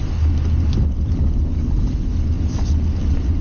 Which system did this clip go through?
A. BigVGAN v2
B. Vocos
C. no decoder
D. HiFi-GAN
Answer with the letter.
C